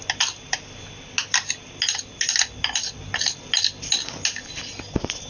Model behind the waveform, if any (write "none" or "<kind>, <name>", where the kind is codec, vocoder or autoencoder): none